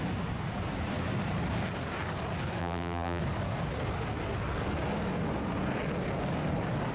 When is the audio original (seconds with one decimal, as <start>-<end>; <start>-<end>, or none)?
0.0-2.6; 3.2-6.9